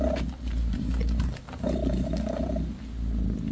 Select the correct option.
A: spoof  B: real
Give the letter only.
B